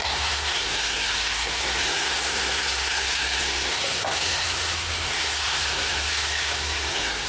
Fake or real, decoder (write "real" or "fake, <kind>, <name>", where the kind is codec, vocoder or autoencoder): fake, codec, SNAC